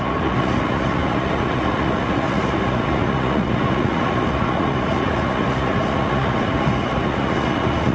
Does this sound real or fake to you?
fake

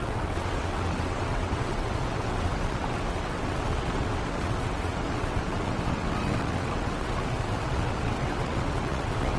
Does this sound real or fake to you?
fake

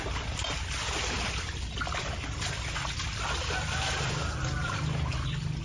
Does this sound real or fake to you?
real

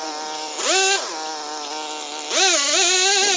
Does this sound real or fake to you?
real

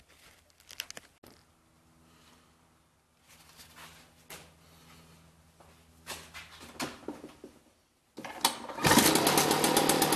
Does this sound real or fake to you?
real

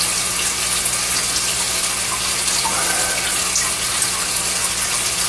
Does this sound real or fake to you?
real